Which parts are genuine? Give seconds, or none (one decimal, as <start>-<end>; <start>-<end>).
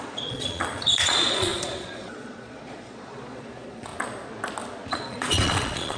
3.9-4.9